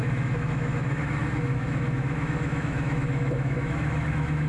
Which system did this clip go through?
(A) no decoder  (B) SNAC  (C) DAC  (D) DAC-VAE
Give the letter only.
D